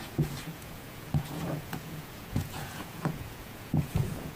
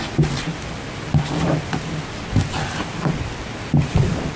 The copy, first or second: first